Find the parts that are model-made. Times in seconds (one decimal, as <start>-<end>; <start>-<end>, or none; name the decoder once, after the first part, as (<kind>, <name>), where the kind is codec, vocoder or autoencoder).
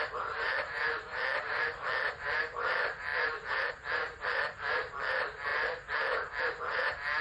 0.0-7.2 (vocoder, BigVGAN v2)